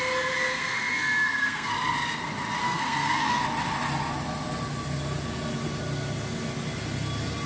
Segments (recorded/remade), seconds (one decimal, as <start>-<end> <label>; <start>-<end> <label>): 0.0-0.5 recorded; 0.5-1.7 remade; 1.7-2.6 recorded; 2.6-3.4 remade; 3.4-7.5 recorded